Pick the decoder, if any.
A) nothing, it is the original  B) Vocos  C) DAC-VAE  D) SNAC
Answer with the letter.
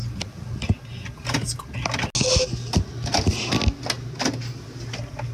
A